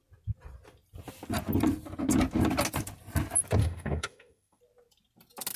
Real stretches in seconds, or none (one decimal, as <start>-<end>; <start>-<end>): 0.0-3.6; 4.6-5.6